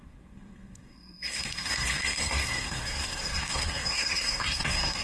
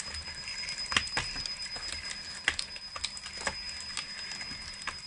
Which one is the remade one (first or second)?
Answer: first